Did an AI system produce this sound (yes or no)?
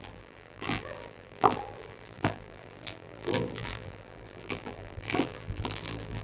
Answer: yes